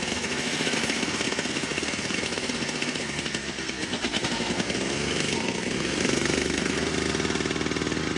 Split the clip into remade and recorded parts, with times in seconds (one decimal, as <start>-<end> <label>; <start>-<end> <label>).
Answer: 0.0-6.9 remade; 6.9-8.2 recorded